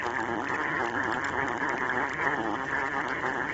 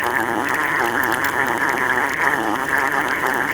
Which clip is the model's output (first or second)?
second